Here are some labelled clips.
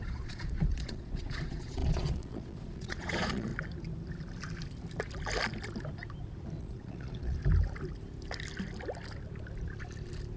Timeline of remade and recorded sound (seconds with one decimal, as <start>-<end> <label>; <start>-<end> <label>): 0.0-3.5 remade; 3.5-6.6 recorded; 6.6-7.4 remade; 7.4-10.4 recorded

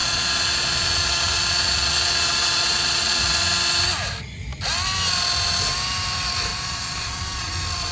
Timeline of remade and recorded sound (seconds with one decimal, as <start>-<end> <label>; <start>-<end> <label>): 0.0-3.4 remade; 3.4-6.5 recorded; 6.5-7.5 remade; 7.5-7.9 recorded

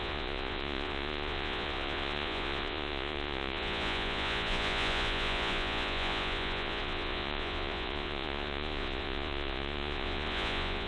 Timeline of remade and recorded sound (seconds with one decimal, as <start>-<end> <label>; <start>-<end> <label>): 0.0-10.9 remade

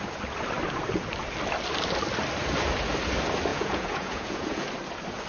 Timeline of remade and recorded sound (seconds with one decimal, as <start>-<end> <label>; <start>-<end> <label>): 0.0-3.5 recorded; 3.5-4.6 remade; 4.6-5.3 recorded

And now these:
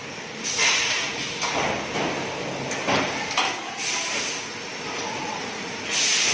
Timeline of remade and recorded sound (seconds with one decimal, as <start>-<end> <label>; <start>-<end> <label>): 0.0-0.5 recorded; 0.5-1.2 remade; 1.2-5.0 recorded; 5.0-6.3 remade

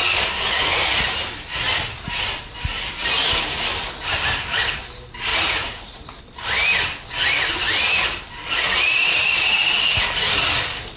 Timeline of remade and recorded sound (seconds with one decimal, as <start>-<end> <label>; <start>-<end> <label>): 0.0-5.3 recorded; 5.3-6.2 remade; 6.2-11.0 recorded

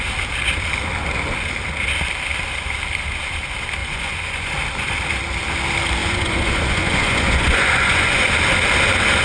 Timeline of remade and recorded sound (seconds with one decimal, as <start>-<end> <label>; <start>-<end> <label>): 0.0-3.8 recorded; 3.8-4.5 remade; 4.5-6.0 recorded; 6.0-8.3 remade; 8.3-9.2 recorded